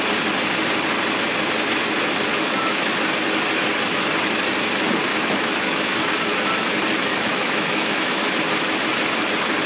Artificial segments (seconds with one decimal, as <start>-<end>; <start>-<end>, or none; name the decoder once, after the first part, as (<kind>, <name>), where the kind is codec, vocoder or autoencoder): 2.3-2.9 (autoencoder, DAC-VAE); 5.1-6.1; 7.1-8.2